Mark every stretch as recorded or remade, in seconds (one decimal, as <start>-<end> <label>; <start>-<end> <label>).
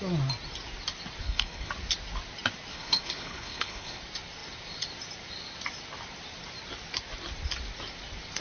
0.0-1.2 recorded; 1.2-1.7 remade; 1.7-2.7 recorded; 2.7-4.0 remade; 4.0-8.4 recorded